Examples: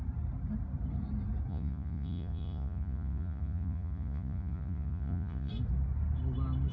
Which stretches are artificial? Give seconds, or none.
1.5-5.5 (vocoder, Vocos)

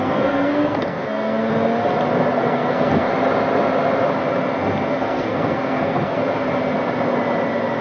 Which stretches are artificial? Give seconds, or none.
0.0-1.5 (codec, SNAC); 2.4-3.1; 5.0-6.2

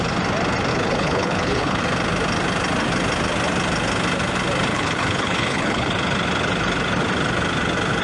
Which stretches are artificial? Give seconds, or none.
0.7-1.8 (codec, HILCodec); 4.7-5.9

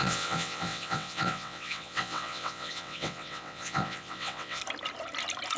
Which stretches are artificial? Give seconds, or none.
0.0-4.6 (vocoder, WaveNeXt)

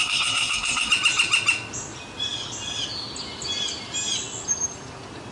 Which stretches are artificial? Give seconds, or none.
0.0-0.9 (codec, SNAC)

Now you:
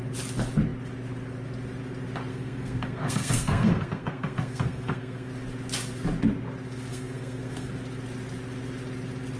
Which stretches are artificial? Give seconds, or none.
2.3-5.3 (codec, SNAC); 6.9-7.7

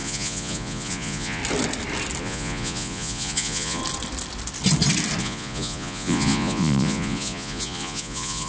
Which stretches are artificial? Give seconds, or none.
0.0-1.4 (vocoder, Vocos); 2.2-3.8; 5.2-8.5

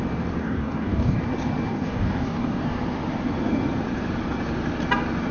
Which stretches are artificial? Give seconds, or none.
0.4-1.2 (codec, DAC); 1.7-2.8